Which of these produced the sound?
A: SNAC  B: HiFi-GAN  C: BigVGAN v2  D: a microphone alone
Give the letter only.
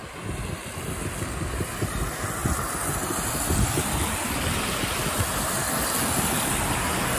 D